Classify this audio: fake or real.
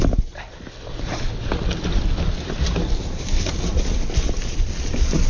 real